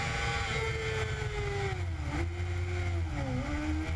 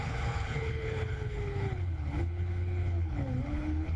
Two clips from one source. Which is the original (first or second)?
first